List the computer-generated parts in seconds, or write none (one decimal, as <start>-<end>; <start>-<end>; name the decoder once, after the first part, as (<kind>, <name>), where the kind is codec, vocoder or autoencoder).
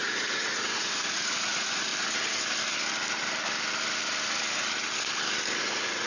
0.0-1.9 (vocoder, Vocos); 5.6-6.1